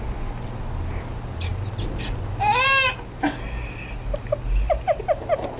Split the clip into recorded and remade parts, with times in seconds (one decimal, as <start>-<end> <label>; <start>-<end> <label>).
0.0-5.6 recorded

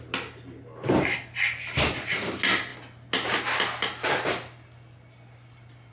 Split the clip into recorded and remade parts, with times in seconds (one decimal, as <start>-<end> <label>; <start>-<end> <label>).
0.0-5.9 recorded

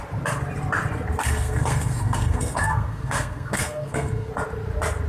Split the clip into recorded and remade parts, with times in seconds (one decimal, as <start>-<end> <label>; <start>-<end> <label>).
0.0-1.2 recorded; 1.2-4.3 remade; 4.3-5.1 recorded